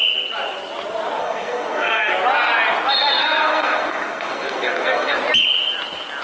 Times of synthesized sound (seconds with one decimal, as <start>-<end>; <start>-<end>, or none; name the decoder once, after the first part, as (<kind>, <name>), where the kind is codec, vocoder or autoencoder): 1.2-2.1 (codec, SNAC); 3.2-5.2